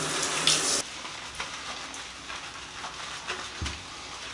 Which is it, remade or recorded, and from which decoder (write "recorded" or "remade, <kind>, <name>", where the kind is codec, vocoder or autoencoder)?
recorded